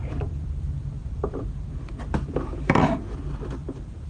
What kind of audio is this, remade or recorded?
remade